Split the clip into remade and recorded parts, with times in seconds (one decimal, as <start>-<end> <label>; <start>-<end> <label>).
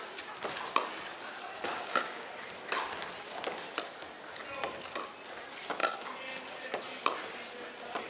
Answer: 0.0-1.7 recorded; 1.7-2.3 remade; 2.3-8.1 recorded